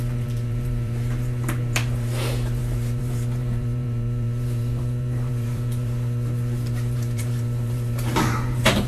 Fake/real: fake